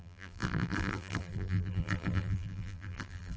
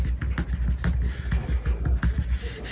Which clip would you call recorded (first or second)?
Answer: second